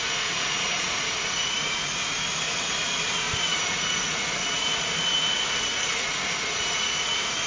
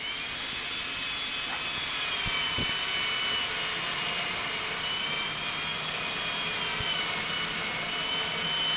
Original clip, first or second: second